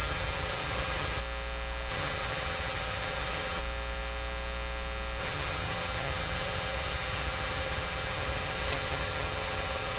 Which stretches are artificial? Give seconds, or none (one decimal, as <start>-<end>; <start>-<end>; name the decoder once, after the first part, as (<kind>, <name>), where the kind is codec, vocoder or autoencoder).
0.0-1.2 (vocoder, HiFi-GAN); 1.9-3.6; 5.2-10.0